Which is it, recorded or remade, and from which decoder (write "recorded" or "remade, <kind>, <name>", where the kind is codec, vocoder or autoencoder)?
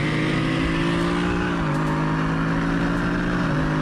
recorded